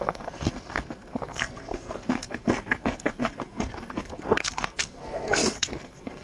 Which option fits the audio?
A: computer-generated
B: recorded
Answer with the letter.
A